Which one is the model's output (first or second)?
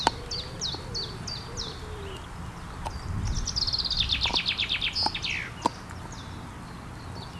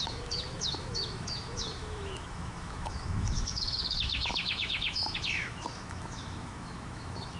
second